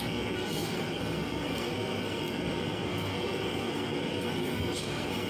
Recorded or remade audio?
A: remade